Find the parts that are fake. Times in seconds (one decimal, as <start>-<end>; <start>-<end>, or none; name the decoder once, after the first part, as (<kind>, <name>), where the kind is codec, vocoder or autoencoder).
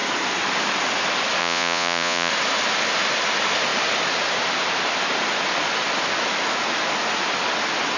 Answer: 1.4-2.3 (vocoder, Vocos)